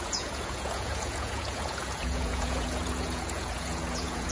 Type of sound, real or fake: fake